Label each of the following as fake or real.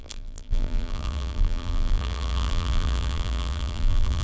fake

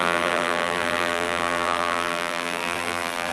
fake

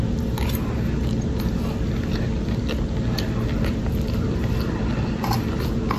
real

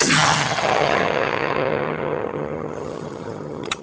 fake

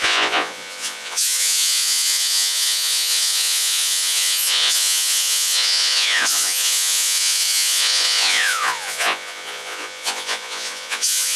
fake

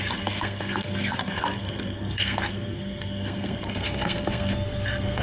fake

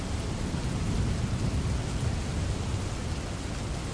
real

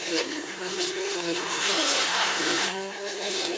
fake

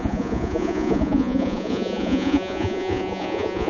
fake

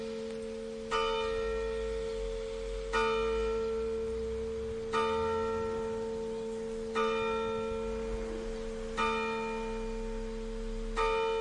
real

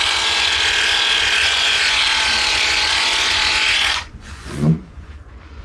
fake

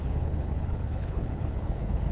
fake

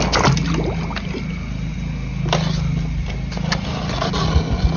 real